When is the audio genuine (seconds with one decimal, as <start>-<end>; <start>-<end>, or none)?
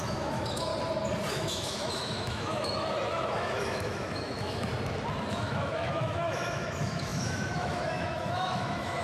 0.7-1.3; 4.7-5.3